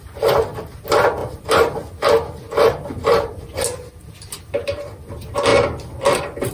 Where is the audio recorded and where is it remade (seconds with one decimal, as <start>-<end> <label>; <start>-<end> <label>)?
0.0-1.2 recorded; 1.2-2.1 remade; 2.1-5.5 recorded; 5.5-6.5 remade